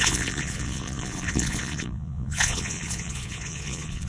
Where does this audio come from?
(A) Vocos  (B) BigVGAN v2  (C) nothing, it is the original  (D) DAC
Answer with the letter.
A